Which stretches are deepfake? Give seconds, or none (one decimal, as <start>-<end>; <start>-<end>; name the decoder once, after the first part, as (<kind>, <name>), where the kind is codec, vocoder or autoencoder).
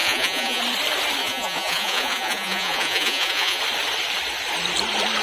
0.0-0.6 (vocoder, Vocos); 1.2-3.6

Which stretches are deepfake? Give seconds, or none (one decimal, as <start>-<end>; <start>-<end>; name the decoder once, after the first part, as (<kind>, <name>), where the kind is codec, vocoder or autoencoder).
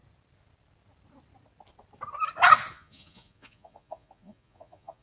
2.7-5.0 (vocoder, Vocos)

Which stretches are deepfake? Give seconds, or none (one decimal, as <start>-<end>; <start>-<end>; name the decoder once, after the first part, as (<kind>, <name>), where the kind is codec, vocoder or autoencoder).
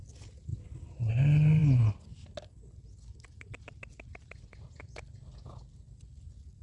none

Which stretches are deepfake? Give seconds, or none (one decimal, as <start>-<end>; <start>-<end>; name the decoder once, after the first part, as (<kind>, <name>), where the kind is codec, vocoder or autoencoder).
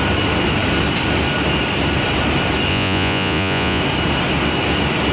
2.7-3.8 (vocoder, Vocos)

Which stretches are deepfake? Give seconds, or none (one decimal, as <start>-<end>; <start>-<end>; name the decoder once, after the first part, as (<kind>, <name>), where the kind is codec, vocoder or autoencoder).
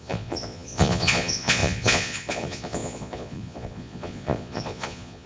0.0-5.3 (vocoder, Vocos)